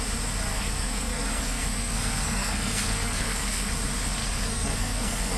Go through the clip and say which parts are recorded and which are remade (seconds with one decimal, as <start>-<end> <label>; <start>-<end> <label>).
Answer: 0.0-0.5 recorded; 0.5-3.7 remade; 3.7-4.2 recorded; 4.2-5.4 remade

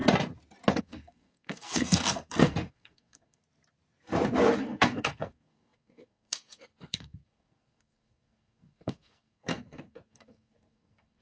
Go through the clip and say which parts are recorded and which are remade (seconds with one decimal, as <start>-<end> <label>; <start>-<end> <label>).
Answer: 0.0-0.8 recorded; 0.8-3.4 remade; 3.4-4.6 recorded; 4.6-11.2 remade